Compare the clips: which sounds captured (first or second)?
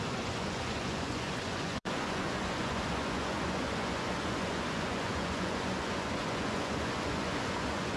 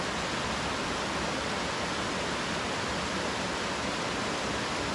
second